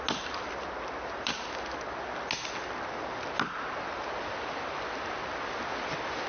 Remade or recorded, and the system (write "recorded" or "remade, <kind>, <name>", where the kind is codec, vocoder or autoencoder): recorded